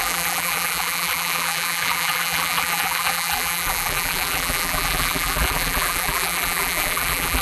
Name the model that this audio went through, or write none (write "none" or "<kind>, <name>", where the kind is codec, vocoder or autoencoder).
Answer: vocoder, BigVGAN v2